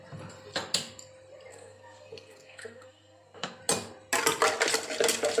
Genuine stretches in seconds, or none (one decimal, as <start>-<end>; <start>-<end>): 0.0-1.5; 3.6-5.4